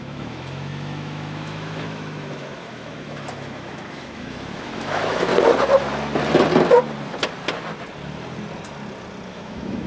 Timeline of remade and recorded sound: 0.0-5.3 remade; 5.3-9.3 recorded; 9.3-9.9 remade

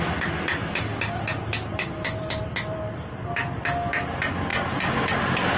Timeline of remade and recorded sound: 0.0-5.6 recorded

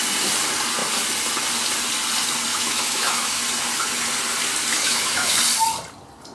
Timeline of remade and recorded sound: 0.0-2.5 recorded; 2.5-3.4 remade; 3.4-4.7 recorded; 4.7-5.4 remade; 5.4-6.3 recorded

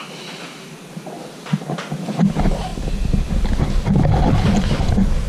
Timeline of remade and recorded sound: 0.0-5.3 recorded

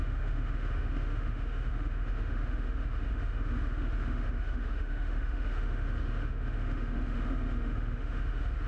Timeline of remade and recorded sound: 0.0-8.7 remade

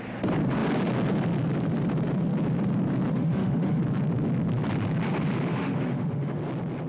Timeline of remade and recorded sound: 0.0-3.1 recorded; 3.1-3.8 remade; 3.8-5.5 recorded; 5.5-6.4 remade; 6.4-6.9 recorded